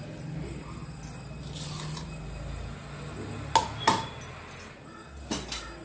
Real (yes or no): yes